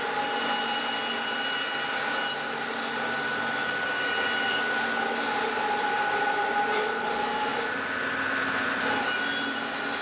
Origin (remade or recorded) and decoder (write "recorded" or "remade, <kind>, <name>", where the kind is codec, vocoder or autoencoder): recorded